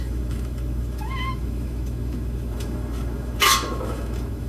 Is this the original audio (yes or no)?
no